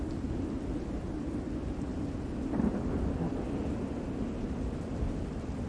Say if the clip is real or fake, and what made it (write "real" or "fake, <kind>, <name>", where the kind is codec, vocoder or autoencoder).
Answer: real